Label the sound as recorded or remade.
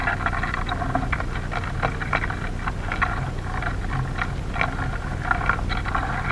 recorded